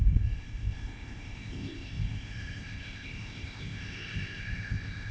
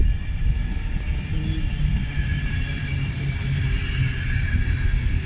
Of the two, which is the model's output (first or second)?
first